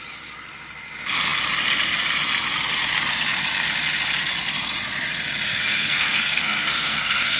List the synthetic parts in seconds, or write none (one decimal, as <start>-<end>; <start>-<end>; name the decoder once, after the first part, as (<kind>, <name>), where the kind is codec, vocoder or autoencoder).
5.5-7.4 (codec, SNAC)